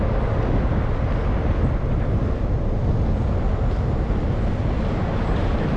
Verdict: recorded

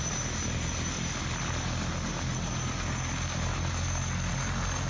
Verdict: recorded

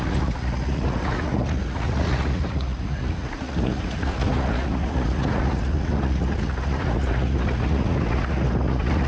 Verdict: remade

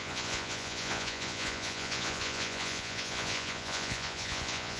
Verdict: remade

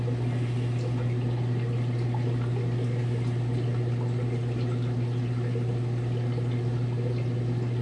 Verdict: recorded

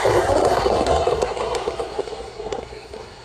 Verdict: remade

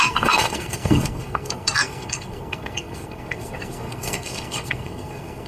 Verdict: remade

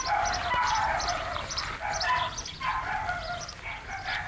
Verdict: recorded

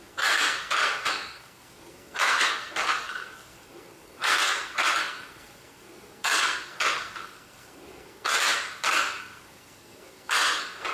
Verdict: remade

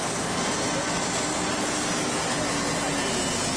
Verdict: recorded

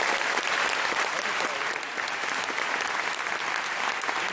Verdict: recorded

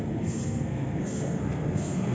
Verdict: remade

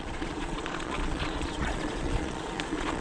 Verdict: remade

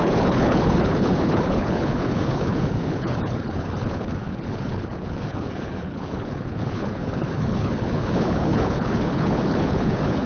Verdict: remade